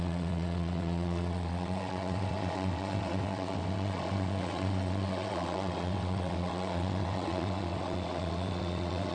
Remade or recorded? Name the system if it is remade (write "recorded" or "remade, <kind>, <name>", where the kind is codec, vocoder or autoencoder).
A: remade, vocoder, WaveNeXt